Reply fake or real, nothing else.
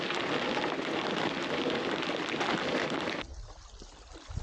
real